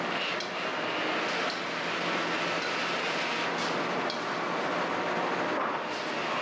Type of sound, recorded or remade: recorded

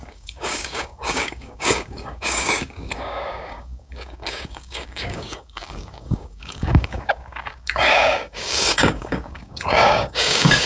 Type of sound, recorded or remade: remade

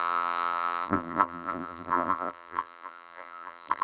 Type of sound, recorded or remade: remade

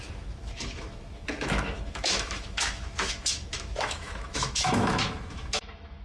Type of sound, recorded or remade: remade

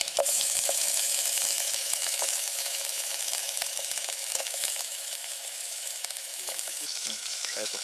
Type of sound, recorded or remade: remade